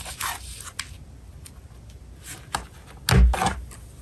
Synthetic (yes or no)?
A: no